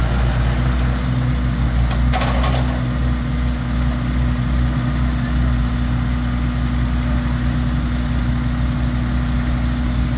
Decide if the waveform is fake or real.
real